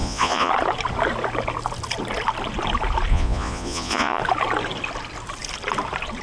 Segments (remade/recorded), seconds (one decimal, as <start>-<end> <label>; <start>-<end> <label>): 0.0-0.5 remade; 0.5-3.1 recorded; 3.1-4.2 remade; 4.2-6.2 recorded